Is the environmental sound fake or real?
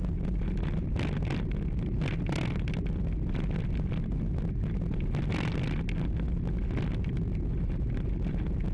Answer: real